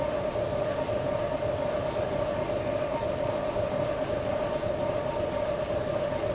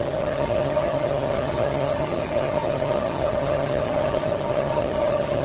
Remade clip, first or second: second